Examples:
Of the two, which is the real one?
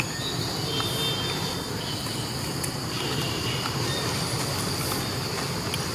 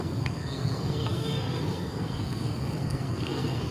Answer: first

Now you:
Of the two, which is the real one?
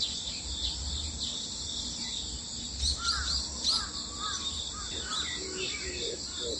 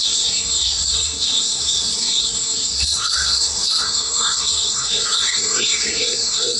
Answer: first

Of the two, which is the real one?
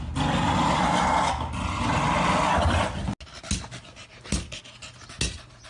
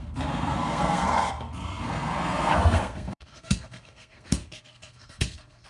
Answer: first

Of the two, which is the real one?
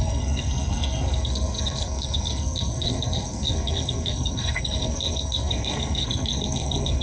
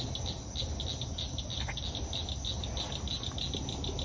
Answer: second